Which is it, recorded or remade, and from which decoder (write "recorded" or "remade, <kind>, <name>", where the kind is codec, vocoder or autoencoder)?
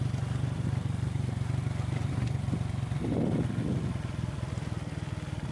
remade, vocoder, BigVGAN v2